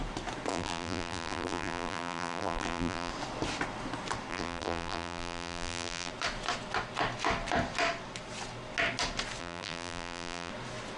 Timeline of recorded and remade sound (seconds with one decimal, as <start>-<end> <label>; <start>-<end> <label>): 0.0-0.5 recorded; 0.5-3.1 remade; 3.1-4.3 recorded; 4.3-6.1 remade; 6.1-9.4 recorded; 9.4-10.5 remade; 10.5-11.0 recorded